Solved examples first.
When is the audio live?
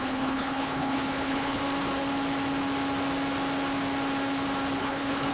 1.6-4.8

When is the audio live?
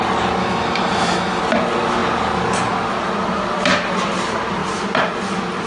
0.0-0.4; 1.4-5.7